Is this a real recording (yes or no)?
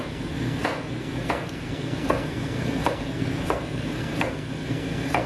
no